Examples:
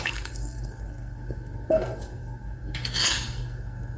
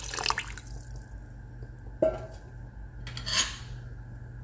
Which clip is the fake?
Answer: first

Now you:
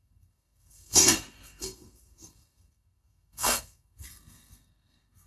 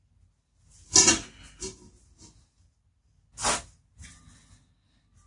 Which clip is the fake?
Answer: first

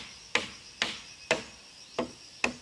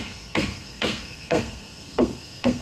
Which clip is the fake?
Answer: second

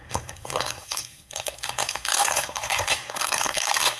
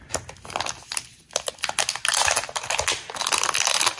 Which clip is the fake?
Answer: first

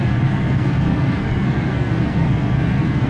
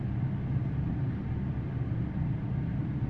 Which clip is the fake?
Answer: first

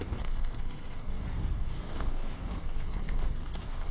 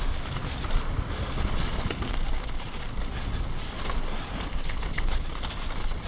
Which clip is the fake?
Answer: first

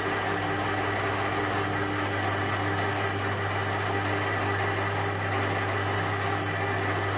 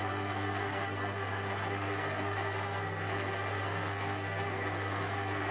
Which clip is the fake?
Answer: second